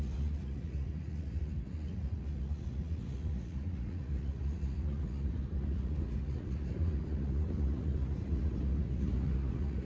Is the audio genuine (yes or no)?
no